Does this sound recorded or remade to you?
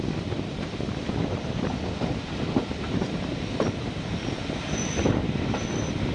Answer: remade